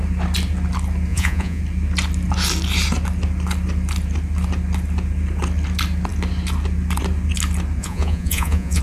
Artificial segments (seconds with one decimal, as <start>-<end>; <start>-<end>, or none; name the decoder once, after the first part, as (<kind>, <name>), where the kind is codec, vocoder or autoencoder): 1.1-1.6 (vocoder, Vocos); 7.8-8.8